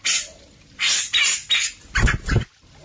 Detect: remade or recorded recorded